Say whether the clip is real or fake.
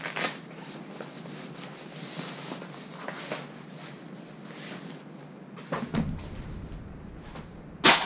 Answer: real